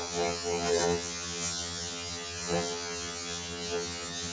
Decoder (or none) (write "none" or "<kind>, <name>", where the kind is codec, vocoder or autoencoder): vocoder, HiFi-GAN